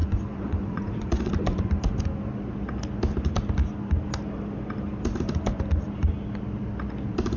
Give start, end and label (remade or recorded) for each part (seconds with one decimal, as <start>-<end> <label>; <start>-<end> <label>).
0.0-1.3 remade; 1.3-7.4 recorded